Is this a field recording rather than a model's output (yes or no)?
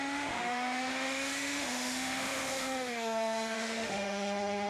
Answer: no